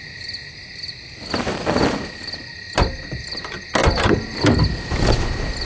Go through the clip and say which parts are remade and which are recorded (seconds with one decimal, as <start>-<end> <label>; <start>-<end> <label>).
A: 0.0-3.8 recorded; 3.8-4.8 remade; 4.8-5.6 recorded